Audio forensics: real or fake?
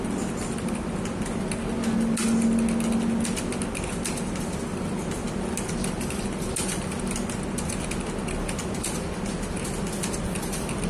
real